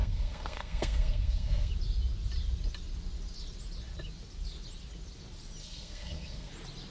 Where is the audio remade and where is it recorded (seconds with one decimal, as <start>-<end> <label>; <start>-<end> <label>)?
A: 0.0-1.7 remade; 1.7-5.6 recorded; 5.6-6.5 remade; 6.5-6.9 recorded